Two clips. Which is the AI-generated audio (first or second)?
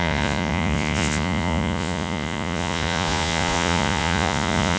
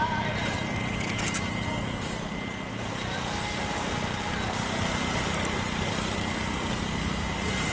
first